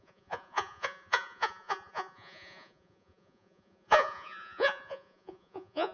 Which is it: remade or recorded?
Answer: remade